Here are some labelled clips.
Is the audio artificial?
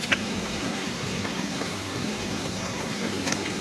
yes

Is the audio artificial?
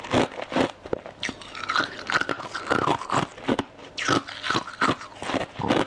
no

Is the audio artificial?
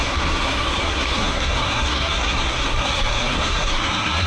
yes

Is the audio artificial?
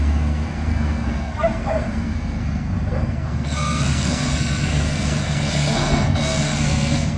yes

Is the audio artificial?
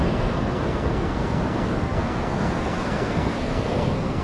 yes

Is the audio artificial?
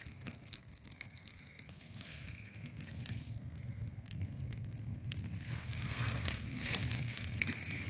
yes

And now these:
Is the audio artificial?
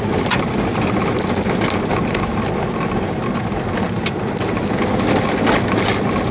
no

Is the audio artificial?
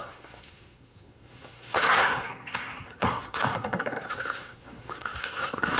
yes